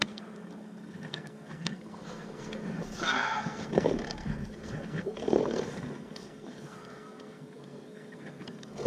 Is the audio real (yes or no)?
no